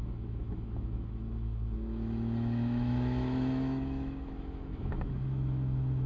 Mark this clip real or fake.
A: fake